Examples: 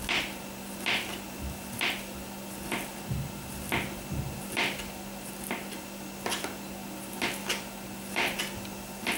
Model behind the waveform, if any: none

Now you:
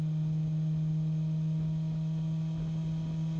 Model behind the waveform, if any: none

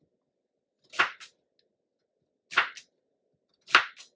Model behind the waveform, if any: none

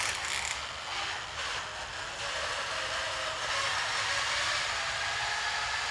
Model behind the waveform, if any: none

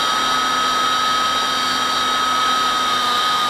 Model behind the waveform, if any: none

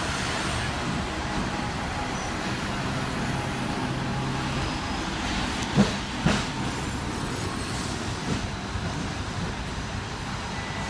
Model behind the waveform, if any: none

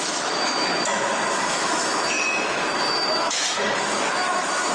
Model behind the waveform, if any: autoencoder, DAC-VAE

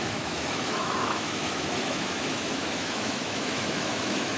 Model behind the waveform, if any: autoencoder, DAC-VAE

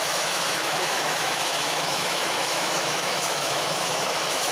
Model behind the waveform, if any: autoencoder, DAC-VAE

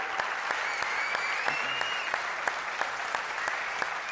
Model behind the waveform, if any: none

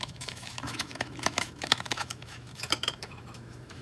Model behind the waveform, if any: autoencoder, DAC-VAE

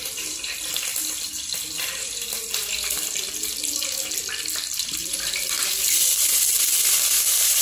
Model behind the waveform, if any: none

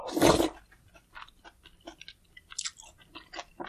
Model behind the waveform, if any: none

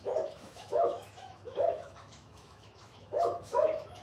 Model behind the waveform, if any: autoencoder, DAC-VAE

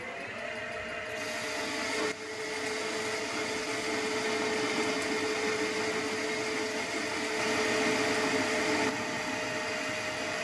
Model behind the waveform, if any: none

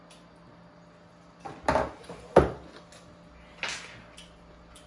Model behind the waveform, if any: none